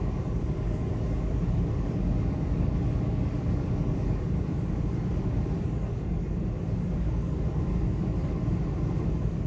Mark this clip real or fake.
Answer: fake